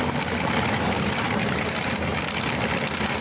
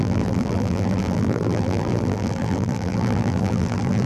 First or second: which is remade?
second